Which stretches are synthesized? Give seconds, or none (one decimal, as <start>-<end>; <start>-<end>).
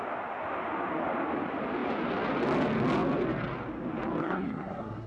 4.2-5.1